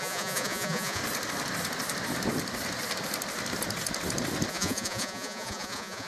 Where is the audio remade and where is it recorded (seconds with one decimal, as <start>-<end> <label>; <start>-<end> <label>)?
0.0-1.0 remade; 1.0-4.5 recorded; 4.5-6.1 remade